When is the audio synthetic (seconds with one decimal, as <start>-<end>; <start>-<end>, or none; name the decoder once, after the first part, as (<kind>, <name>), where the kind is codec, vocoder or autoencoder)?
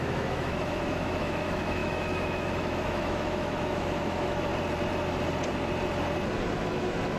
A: 0.0-4.5 (autoencoder, DAC-VAE); 6.5-7.2